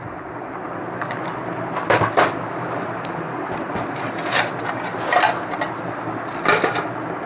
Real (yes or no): yes